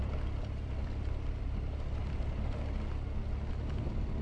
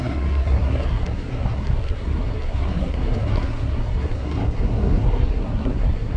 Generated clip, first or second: second